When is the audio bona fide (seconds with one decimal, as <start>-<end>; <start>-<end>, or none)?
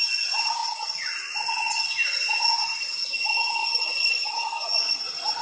0.0-0.6; 1.9-3.6; 4.3-5.4